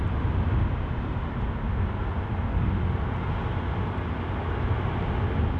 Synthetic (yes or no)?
no